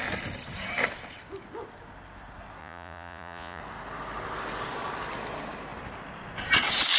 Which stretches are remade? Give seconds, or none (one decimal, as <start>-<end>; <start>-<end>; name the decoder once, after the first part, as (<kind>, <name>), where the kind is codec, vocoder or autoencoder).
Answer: 2.6-3.6 (vocoder, Vocos)

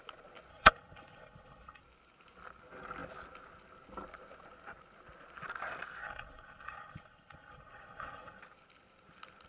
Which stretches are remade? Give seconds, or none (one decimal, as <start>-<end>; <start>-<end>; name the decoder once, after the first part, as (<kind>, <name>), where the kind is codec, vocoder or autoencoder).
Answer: 0.5-1.8 (codec, HILCodec); 6.0-8.4

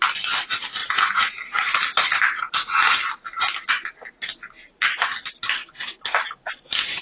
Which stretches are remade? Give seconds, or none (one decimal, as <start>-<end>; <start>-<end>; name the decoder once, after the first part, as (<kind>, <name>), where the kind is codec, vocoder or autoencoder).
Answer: none

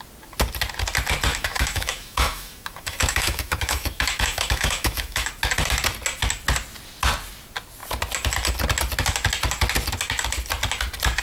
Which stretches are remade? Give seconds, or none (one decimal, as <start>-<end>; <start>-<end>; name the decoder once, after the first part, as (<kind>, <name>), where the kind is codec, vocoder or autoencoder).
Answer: 1.3-5.3 (autoencoder, DAC-VAE)

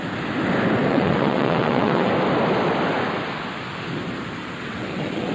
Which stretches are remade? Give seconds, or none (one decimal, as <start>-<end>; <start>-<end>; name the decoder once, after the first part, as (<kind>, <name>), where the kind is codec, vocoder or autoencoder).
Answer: 0.9-2.1 (vocoder, WaveNeXt); 4.4-5.3

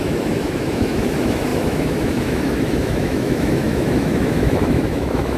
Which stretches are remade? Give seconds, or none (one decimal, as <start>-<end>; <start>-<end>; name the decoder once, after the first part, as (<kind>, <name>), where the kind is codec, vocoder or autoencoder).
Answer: 0.0-5.4 (autoencoder, DAC-VAE)